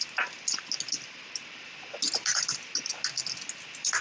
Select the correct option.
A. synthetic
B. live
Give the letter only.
B